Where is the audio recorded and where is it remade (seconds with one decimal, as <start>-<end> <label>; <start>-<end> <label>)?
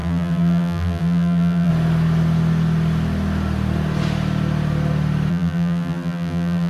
0.0-1.7 remade; 1.7-5.3 recorded; 5.3-6.7 remade